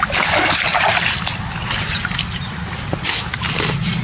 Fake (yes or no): no